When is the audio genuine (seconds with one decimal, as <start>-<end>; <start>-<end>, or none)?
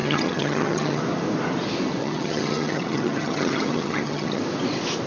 1.0-2.0; 4.4-5.1